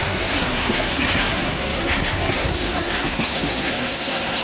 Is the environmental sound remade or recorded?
remade